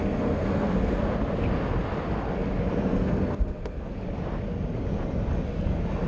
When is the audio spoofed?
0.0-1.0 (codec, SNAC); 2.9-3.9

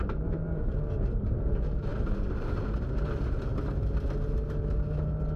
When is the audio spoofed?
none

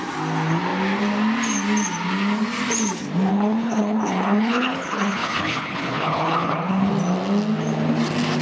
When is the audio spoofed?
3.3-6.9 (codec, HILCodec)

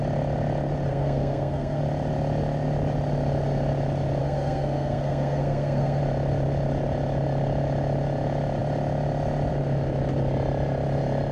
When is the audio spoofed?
0.9-1.8 (codec, SNAC); 4.2-6.0